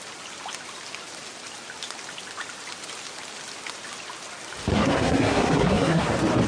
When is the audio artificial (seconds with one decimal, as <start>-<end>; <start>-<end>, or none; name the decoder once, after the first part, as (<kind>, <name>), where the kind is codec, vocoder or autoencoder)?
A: 4.7-6.1 (codec, SNAC)